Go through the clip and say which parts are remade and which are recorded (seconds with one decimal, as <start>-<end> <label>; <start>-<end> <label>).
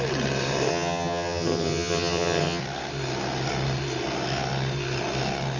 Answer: 0.0-0.7 recorded; 0.7-2.6 remade; 2.6-5.6 recorded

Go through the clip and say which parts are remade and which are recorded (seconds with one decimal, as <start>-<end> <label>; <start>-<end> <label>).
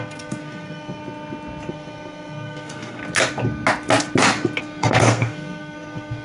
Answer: 0.0-1.0 remade; 1.0-1.7 recorded; 1.7-3.0 remade; 3.0-4.6 recorded; 4.6-6.2 remade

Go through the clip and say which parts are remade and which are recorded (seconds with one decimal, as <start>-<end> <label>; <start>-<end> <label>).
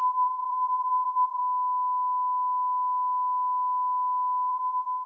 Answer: 0.0-1.4 remade; 1.4-4.5 recorded; 4.5-5.1 remade